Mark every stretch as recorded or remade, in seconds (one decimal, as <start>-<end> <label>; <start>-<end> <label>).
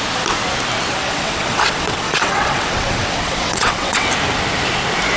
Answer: 0.0-1.0 recorded; 1.0-4.1 remade; 4.1-5.2 recorded